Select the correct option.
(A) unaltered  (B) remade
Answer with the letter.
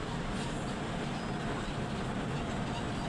A